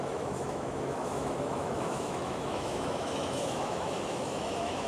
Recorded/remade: remade